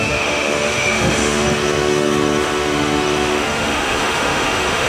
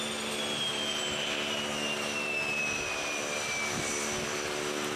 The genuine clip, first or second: second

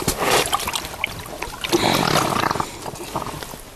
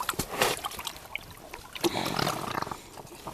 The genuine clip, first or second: first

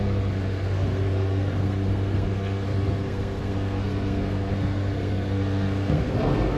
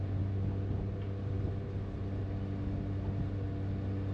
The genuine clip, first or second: second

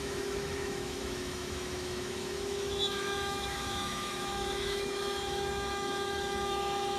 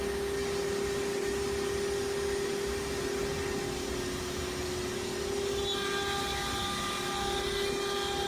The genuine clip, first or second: second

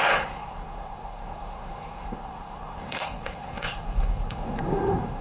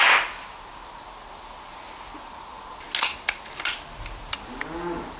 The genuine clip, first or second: second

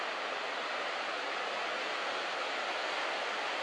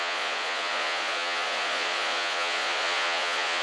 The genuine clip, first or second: first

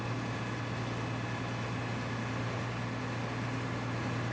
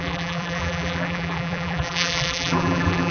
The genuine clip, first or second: first